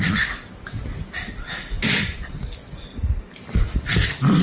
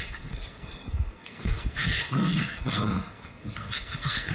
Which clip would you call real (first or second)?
first